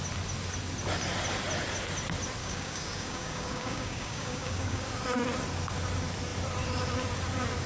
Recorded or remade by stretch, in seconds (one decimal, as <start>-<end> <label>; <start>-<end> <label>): 0.0-2.4 recorded; 2.4-4.8 remade; 4.8-7.7 recorded